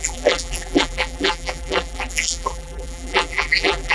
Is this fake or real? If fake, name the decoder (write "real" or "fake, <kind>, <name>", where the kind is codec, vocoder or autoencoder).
fake, vocoder, BigVGAN v2